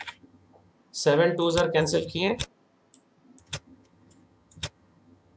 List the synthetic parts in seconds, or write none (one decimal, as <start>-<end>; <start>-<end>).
0.0-0.7; 1.8-2.4; 3.4-5.4